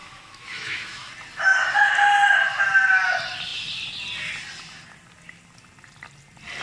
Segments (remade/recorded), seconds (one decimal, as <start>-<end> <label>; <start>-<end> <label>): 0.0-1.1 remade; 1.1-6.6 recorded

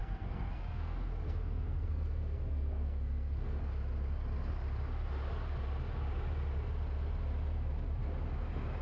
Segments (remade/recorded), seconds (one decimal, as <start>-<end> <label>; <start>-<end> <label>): 0.0-3.6 remade; 3.6-8.8 recorded

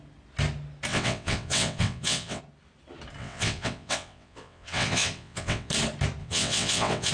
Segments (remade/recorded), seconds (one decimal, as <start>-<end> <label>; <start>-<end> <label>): 0.0-0.9 recorded; 0.9-2.4 remade; 2.4-3.2 recorded; 3.2-5.7 remade; 5.7-6.2 recorded; 6.2-7.1 remade

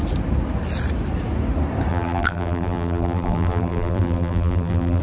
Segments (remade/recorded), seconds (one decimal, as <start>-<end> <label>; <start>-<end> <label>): 0.0-1.9 recorded; 1.9-5.0 remade

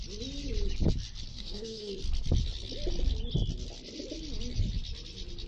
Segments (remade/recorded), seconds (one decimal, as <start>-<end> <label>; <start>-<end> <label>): 0.0-1.3 recorded; 1.3-1.9 remade; 1.9-5.5 recorded